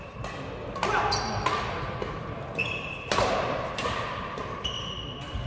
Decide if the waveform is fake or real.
real